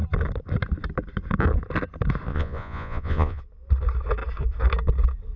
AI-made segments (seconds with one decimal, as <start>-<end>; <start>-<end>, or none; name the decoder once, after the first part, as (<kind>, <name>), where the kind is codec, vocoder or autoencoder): 2.3-3.4 (vocoder, Vocos)